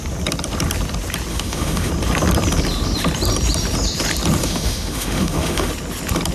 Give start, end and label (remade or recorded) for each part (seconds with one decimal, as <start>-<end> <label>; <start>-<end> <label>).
0.0-1.3 recorded; 1.3-1.9 remade; 1.9-4.4 recorded; 4.4-5.7 remade; 5.7-6.3 recorded